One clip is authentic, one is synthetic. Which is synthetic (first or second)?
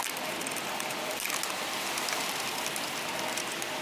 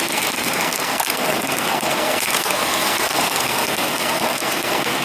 second